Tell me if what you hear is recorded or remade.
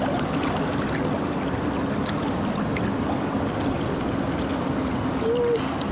recorded